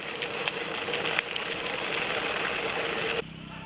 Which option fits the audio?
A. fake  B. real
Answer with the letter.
B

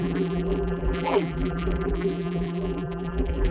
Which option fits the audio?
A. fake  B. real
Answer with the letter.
A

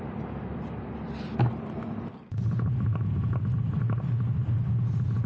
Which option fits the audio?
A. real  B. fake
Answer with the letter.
A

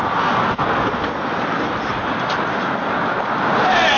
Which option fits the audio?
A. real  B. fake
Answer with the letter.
A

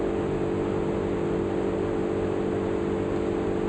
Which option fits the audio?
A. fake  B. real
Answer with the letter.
B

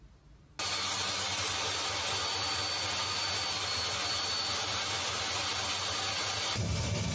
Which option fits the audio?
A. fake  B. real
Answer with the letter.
B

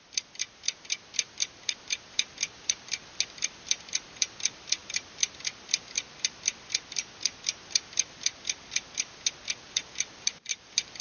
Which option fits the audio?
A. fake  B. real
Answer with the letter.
B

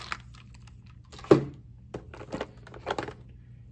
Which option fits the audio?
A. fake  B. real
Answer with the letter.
B